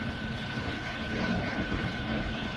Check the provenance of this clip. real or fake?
fake